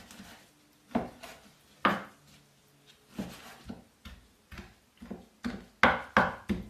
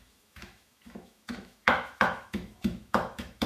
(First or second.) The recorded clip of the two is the first